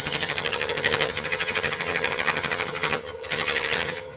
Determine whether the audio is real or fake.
fake